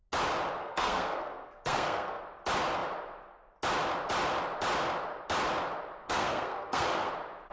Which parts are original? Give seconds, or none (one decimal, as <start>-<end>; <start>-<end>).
0.0-0.6; 2.2-6.0; 7.1-7.5